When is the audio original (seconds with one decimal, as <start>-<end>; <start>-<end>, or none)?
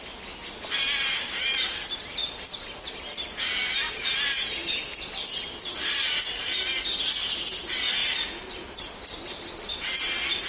0.0-4.4; 5.1-10.5